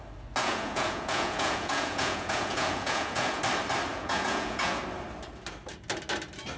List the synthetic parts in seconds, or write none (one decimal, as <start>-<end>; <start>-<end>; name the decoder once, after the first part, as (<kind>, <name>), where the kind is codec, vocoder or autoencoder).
0.4-3.4 (vocoder, Vocos); 3.9-4.8